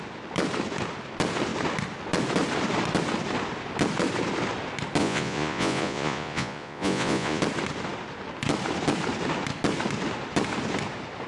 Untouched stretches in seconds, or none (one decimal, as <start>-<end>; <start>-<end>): 0.0-5.0; 7.4-11.3